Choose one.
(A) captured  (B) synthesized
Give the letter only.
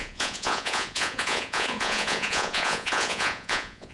B